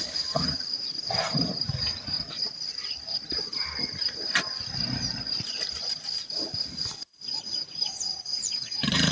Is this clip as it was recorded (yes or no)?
no